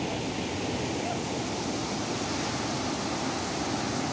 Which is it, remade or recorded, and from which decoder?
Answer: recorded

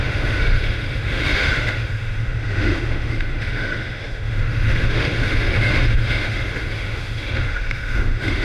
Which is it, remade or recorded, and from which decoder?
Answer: remade, autoencoder, DAC-VAE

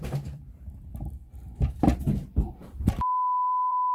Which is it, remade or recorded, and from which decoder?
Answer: remade, vocoder, BigVGAN v2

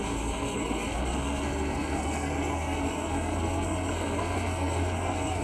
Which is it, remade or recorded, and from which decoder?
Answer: remade, codec, SNAC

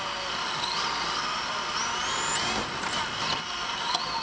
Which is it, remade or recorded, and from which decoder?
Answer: recorded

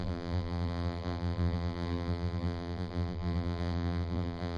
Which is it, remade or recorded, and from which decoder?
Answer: remade, vocoder, BigVGAN v2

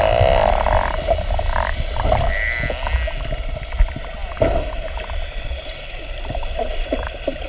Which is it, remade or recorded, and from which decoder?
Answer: recorded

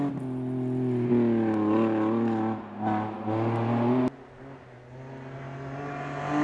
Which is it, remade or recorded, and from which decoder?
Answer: recorded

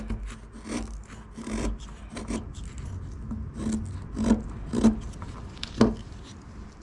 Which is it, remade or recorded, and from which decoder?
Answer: recorded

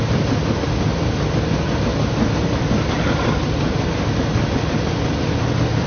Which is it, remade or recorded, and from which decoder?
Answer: recorded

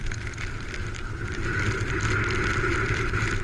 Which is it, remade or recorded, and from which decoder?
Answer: recorded